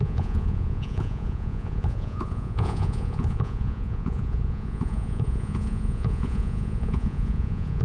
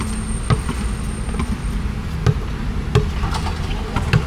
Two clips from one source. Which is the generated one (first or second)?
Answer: first